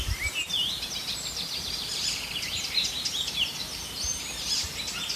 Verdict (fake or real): real